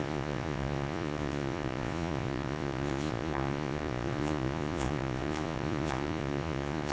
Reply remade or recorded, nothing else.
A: remade